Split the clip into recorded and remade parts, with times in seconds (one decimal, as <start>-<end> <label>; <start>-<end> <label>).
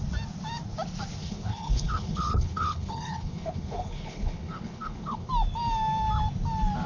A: 0.0-1.2 recorded; 1.2-5.3 remade; 5.3-6.9 recorded